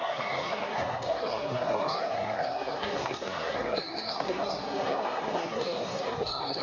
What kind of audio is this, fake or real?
fake